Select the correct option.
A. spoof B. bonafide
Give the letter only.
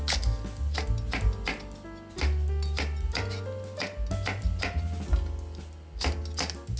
B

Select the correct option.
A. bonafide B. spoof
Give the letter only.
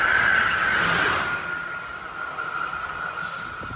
A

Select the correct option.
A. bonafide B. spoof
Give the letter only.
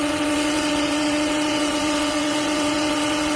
B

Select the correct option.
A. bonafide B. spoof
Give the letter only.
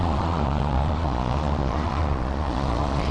B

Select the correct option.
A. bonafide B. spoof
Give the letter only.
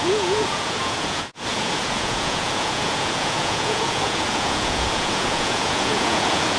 B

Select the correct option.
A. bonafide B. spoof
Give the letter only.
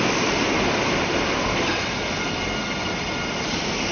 A